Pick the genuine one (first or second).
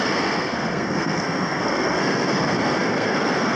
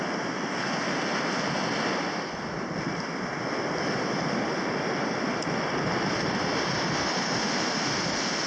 second